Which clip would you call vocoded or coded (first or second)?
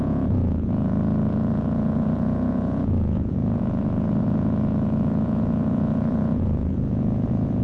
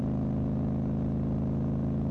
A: first